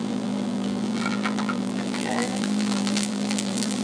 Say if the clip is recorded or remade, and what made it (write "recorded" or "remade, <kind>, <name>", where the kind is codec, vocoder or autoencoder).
remade, vocoder, BigVGAN v2